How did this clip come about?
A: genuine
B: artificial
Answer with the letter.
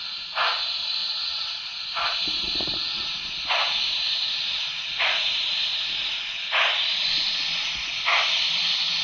A